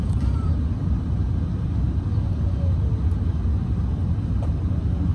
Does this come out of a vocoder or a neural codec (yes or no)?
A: no